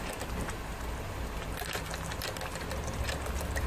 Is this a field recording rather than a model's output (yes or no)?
yes